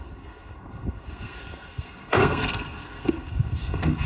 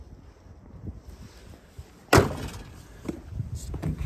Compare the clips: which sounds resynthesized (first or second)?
first